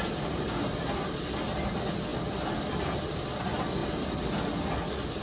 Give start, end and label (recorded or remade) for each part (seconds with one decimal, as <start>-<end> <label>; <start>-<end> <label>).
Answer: 0.0-5.2 recorded

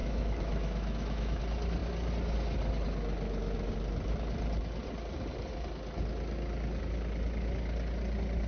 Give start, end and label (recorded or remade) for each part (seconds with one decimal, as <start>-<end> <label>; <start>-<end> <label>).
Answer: 0.0-1.4 remade; 1.4-8.5 recorded